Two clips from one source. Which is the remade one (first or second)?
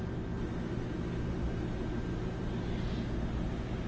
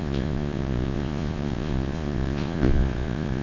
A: second